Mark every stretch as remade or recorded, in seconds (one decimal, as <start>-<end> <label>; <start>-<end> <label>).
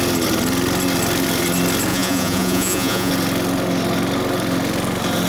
0.0-1.9 recorded; 1.9-3.1 remade; 3.1-5.3 recorded